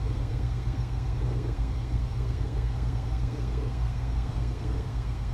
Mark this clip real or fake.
fake